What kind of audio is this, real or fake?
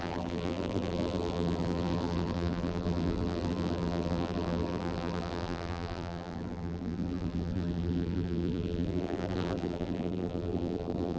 fake